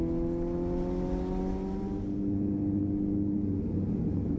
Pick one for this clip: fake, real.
real